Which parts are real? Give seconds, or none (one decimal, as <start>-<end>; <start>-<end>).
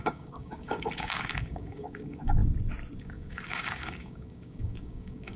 2.4-3.0